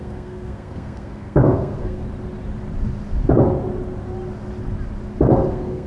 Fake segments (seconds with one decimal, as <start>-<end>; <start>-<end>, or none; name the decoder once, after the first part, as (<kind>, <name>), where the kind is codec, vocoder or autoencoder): 0.0-2.0 (codec, SNAC); 5.5-5.9